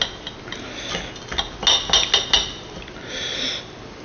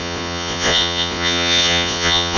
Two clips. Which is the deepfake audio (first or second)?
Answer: second